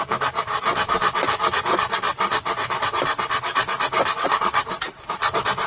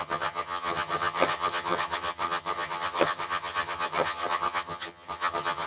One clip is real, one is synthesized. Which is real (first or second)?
first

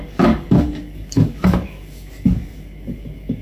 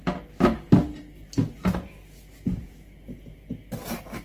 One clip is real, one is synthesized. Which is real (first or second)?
second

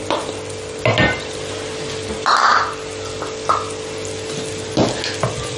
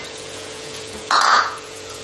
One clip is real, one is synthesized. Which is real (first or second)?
first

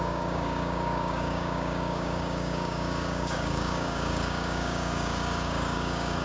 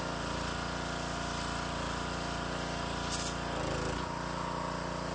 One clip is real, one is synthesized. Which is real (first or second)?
second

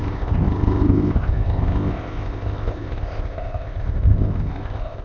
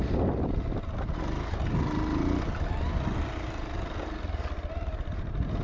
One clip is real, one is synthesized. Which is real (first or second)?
second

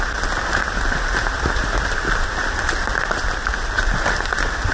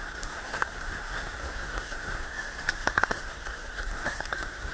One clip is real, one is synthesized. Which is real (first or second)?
first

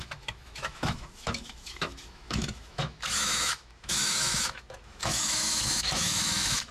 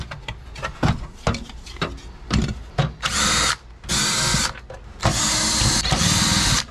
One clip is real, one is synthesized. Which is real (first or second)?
second